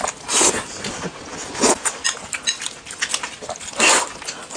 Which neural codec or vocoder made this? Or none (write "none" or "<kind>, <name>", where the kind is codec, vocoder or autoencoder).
none